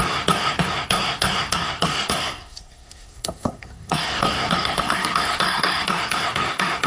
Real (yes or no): no